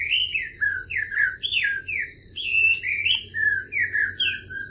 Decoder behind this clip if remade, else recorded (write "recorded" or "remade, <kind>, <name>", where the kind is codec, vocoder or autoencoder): recorded